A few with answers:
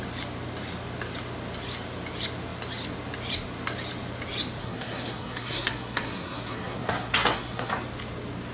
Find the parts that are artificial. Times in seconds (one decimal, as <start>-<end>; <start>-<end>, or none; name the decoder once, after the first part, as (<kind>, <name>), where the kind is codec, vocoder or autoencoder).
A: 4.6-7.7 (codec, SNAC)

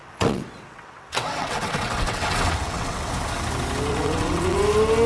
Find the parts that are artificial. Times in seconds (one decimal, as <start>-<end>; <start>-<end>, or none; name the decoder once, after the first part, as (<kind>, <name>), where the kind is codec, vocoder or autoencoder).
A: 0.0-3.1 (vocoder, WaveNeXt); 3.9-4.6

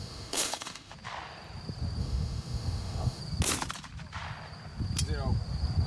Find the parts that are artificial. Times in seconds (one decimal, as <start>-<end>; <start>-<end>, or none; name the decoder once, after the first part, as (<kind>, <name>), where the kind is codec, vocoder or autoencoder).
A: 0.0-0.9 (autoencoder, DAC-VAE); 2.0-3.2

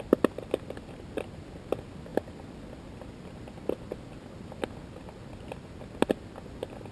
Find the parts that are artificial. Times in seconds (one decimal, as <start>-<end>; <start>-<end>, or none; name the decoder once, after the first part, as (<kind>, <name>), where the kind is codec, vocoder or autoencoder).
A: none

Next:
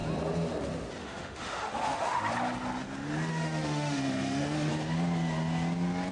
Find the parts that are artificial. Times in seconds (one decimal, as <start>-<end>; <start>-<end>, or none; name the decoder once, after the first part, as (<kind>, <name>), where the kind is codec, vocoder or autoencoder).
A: 1.0-2.2 (autoencoder, DAC-VAE); 3.3-4.7

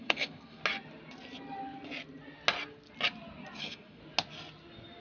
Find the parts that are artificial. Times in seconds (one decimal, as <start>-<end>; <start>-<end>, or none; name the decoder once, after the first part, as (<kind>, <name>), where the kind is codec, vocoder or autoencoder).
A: 0.0-0.6 (codec, SNAC); 3.6-4.0

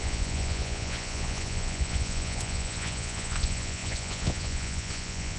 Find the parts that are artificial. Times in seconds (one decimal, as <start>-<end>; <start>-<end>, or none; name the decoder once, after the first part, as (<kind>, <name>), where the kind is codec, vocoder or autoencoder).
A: 0.0-5.4 (vocoder, Vocos)

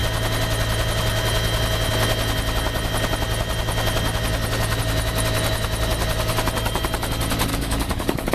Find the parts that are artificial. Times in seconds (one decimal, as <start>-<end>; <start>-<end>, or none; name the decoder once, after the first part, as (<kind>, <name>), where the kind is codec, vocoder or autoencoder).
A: 7.5-8.3 (codec, DAC)